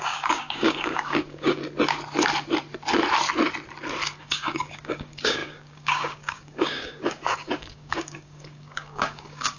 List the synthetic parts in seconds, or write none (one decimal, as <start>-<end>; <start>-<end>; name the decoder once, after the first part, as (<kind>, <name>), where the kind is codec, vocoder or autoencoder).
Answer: 0.0-1.6 (codec, DAC); 4.2-9.6